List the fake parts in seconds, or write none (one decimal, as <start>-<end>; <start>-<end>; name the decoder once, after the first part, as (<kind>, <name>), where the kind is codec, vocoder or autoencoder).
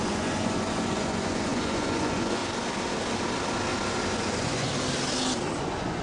0.0-2.4 (vocoder, Vocos); 4.1-4.7; 5.6-6.0